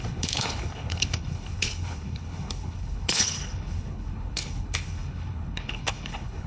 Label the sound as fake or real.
fake